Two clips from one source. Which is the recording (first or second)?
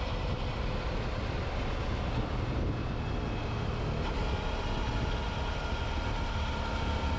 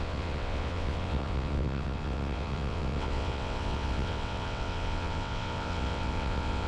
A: first